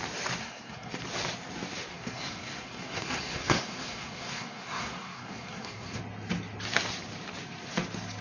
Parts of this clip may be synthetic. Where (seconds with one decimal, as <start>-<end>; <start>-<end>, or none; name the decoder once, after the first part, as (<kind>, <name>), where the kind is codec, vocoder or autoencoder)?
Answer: 0.4-0.9 (codec, SNAC); 1.9-6.0